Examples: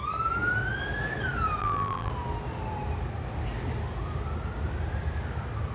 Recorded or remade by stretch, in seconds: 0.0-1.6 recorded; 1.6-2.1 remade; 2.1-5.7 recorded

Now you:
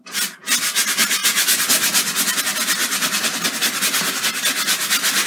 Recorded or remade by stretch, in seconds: 0.0-5.3 recorded

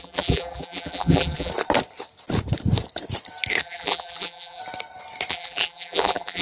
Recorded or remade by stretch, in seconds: 0.0-1.5 remade; 1.5-3.6 recorded; 3.6-4.6 remade; 4.6-5.3 recorded; 5.3-6.4 remade